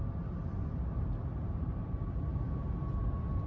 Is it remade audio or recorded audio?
recorded